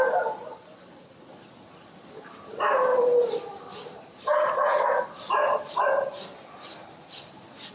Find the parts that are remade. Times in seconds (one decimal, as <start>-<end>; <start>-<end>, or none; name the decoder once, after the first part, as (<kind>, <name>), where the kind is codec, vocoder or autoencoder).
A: 0.0-0.9 (vocoder, BigVGAN v2); 2.9-7.7